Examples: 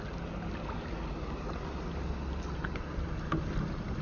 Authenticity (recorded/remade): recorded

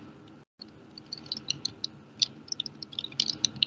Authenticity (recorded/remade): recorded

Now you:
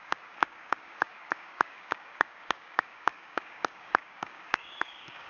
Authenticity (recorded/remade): remade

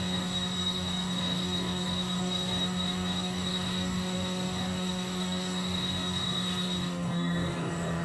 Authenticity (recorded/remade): remade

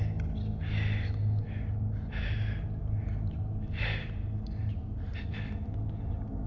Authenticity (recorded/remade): recorded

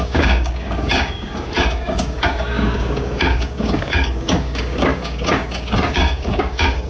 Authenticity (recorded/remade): remade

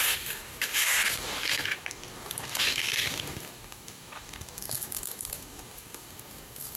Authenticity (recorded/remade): remade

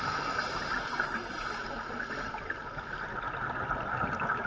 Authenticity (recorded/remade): recorded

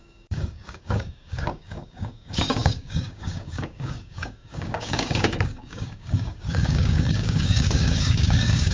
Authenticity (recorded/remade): remade